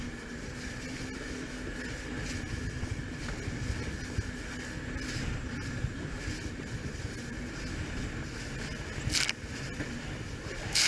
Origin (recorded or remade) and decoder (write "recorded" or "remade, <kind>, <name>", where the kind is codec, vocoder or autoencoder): recorded